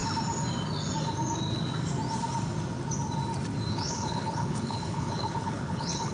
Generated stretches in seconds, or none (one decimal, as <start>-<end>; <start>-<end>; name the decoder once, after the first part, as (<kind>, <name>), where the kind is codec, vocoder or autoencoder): 3.7-6.1 (codec, HILCodec)